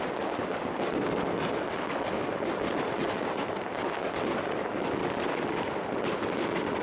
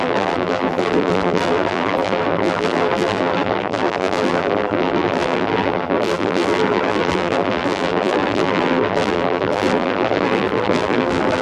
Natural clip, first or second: first